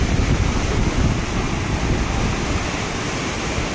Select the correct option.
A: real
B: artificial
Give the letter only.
A